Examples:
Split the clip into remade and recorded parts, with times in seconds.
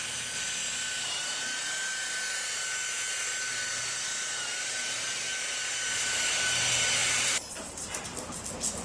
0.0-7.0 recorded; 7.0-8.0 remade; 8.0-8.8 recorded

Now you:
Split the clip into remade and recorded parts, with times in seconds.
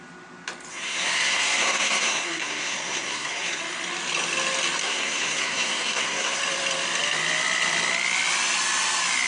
0.0-0.7 recorded; 0.7-3.6 remade; 3.6-4.8 recorded; 4.8-6.4 remade; 6.4-9.3 recorded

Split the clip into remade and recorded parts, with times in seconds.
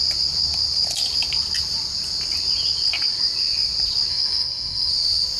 0.0-4.1 recorded; 4.1-4.9 remade; 4.9-5.4 recorded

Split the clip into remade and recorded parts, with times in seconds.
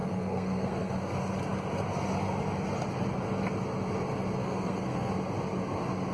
0.0-0.9 remade; 0.9-4.4 recorded; 4.4-5.1 remade; 5.1-6.1 recorded